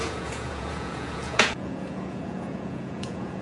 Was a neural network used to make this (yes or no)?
yes